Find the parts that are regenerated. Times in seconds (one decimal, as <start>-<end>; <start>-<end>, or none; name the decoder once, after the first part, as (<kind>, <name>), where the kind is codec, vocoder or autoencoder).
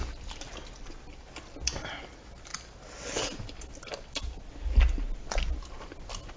none